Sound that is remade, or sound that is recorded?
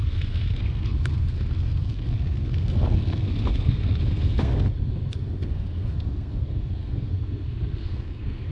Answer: remade